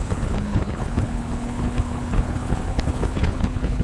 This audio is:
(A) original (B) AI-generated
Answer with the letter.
B